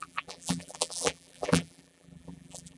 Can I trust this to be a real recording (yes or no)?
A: no